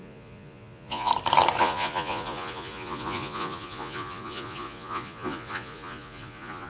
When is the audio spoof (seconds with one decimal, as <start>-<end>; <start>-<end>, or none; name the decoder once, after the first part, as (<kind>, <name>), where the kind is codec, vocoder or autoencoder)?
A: 0.0-1.1 (vocoder, Vocos); 1.6-6.7